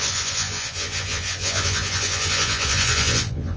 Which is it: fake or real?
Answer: fake